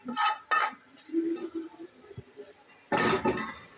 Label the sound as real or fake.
real